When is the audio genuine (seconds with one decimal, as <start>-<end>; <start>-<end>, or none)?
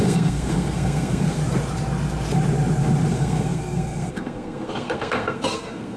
1.4-3.1